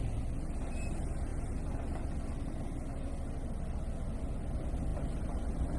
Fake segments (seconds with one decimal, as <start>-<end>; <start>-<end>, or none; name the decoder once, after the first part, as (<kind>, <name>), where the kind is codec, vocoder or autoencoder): none

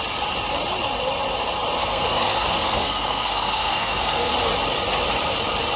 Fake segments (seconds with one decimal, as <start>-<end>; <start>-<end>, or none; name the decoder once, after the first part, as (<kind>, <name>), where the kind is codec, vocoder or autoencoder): 1.8-4.3 (codec, SNAC)